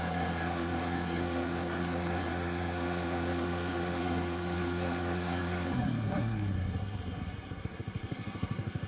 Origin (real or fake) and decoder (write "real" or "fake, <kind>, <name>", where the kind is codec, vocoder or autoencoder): fake, codec, SNAC